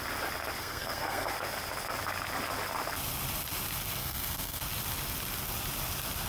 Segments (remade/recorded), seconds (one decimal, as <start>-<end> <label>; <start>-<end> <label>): 0.0-0.6 recorded; 0.6-1.3 remade; 1.3-4.0 recorded; 4.0-4.6 remade; 4.6-6.3 recorded